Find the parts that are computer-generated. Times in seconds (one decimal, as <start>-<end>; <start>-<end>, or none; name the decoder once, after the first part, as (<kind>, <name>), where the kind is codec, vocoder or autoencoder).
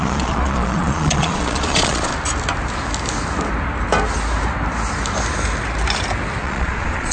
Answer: 0.0-2.1 (vocoder, Vocos); 6.4-7.1